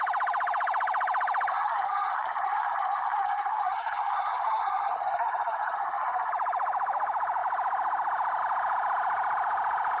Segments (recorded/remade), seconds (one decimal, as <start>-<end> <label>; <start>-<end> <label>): 0.0-1.5 recorded; 1.5-6.3 remade; 6.3-10.0 recorded